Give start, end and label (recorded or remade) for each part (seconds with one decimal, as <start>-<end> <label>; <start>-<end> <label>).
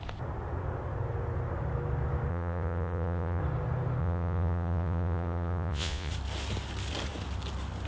0.0-2.3 recorded; 2.3-3.4 remade; 3.4-4.0 recorded; 4.0-6.1 remade; 6.1-7.9 recorded